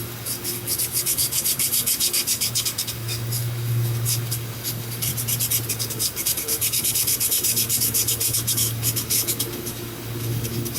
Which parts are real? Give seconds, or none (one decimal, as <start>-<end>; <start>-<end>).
5.1-5.7